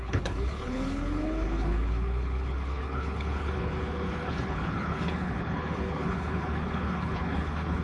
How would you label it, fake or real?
fake